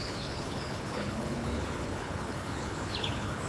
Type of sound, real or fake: fake